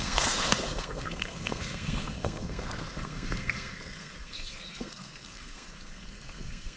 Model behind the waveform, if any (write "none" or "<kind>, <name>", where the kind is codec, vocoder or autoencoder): codec, SNAC